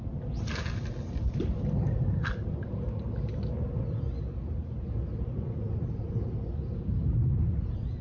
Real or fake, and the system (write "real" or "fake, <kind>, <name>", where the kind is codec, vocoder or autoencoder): real